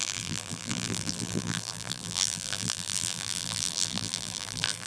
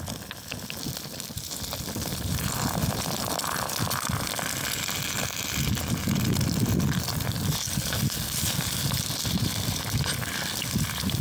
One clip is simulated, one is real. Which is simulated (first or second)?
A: first